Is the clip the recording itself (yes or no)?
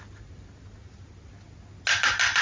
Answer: yes